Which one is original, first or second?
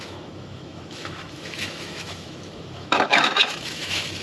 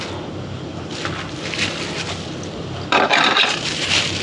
second